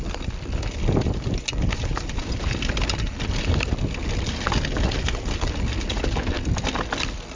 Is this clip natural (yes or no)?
yes